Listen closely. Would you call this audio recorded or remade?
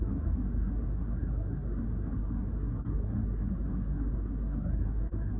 remade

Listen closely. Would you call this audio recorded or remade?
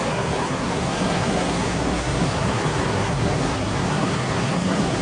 remade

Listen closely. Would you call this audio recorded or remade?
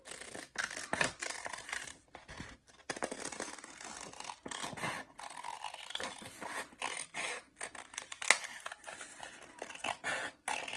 recorded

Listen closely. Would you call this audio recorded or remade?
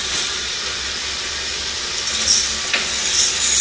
recorded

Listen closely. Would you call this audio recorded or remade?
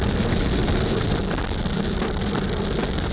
recorded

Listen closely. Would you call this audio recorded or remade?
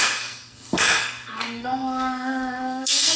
remade